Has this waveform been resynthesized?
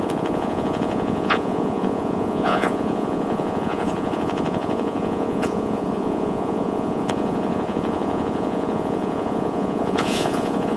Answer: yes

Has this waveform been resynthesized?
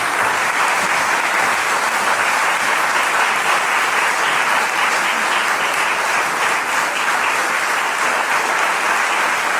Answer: no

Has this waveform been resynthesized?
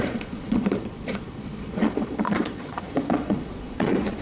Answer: yes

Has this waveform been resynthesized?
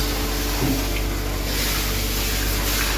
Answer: no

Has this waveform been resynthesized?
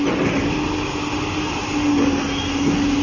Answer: no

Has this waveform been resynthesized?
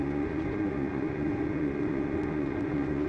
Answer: yes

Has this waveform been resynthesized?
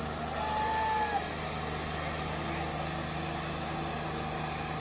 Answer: no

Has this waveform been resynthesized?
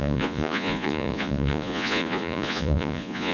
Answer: yes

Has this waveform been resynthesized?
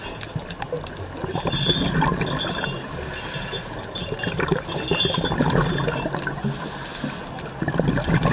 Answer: no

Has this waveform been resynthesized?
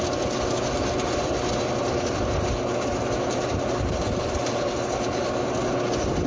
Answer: no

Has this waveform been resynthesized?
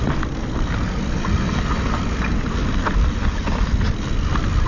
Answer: no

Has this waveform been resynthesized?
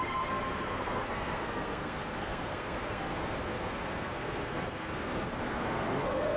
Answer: yes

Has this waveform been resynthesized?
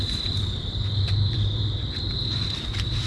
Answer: yes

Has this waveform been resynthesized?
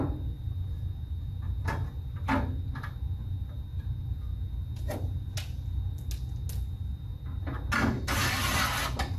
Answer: no